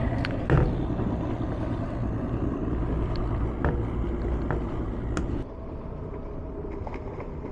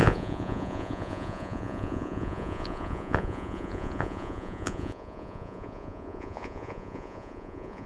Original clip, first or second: first